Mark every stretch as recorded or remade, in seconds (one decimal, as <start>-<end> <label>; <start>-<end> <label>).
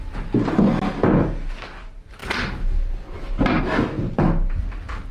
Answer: 0.0-5.1 recorded